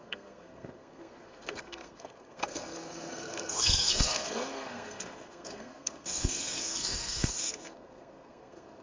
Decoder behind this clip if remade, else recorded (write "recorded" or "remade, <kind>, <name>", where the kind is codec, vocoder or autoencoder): remade, codec, SNAC